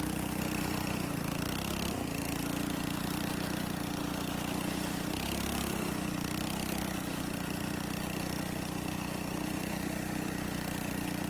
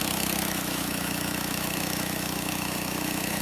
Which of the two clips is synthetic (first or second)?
second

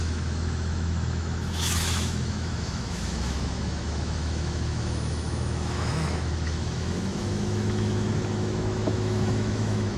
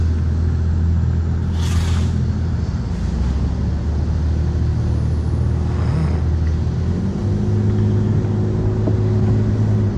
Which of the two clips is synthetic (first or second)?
first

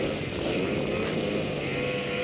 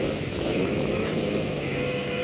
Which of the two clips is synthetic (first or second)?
second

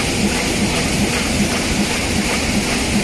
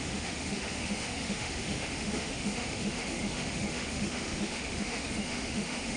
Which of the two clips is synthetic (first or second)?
second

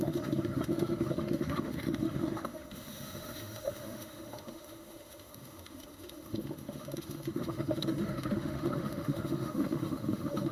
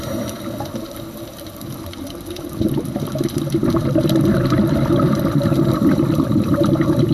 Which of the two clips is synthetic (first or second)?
first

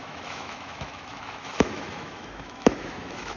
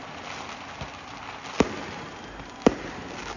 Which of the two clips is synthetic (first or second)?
first